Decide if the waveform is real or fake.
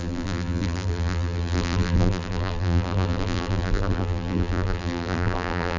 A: fake